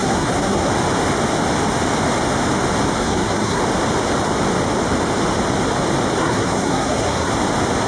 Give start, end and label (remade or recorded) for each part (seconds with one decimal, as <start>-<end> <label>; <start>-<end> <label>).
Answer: 0.0-0.7 remade; 0.7-3.0 recorded; 3.0-3.6 remade; 3.6-6.2 recorded; 6.2-7.3 remade; 7.3-7.9 recorded